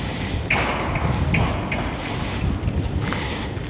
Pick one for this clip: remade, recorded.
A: recorded